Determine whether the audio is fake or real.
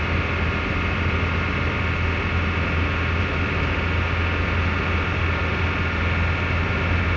real